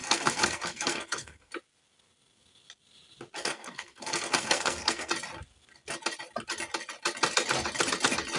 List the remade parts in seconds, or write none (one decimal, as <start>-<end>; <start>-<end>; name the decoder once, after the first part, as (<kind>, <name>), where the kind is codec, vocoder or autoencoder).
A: 0.0-1.5 (codec, SNAC); 3.4-5.1